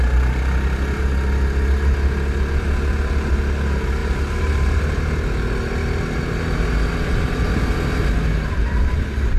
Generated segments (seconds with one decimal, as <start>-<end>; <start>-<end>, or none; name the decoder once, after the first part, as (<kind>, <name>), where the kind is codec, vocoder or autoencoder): 4.0-4.8 (vocoder, BigVGAN v2)